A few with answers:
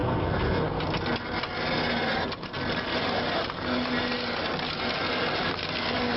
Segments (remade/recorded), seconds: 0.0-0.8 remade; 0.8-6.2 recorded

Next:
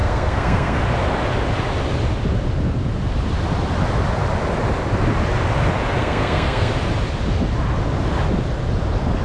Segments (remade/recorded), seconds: 0.0-0.8 remade; 0.8-6.0 recorded; 6.0-6.7 remade; 6.7-9.2 recorded

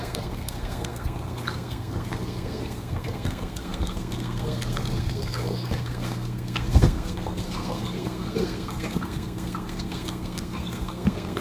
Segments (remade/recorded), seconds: 0.0-11.4 remade

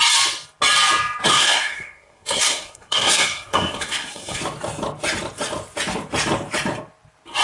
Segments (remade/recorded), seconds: 0.0-1.3 recorded; 1.3-4.4 remade; 4.4-7.4 recorded

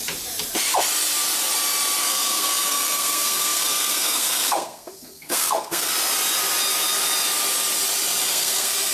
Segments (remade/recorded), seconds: 0.0-2.0 recorded; 2.0-5.9 remade; 5.9-8.3 recorded; 8.3-8.9 remade

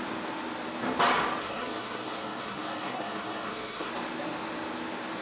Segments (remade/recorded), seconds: 0.0-1.4 recorded; 1.4-3.9 remade; 3.9-5.2 recorded

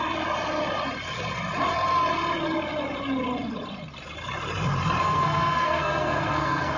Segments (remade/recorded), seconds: 0.0-5.0 recorded; 5.0-6.8 remade